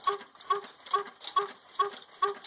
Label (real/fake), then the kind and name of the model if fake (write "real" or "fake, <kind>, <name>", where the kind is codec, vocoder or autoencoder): real